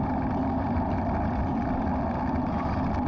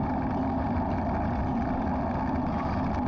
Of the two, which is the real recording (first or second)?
second